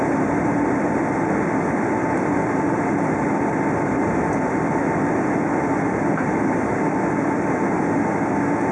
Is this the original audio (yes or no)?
yes